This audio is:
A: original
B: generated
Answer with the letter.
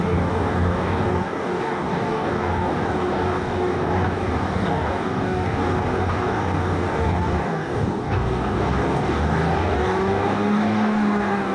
B